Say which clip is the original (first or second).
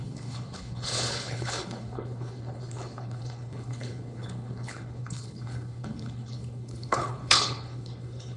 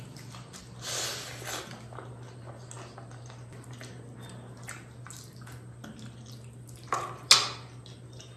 second